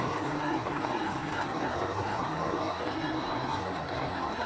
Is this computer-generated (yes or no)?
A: yes